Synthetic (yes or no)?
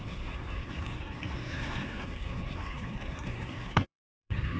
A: yes